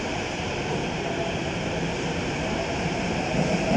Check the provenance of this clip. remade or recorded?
remade